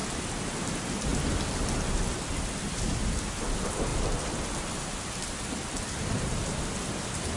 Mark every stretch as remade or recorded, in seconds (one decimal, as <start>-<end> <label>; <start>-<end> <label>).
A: 0.0-0.6 recorded; 0.6-1.1 remade; 1.1-2.6 recorded; 2.6-7.4 remade